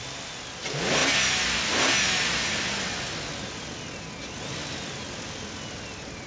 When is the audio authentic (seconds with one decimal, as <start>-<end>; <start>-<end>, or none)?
0.0-6.3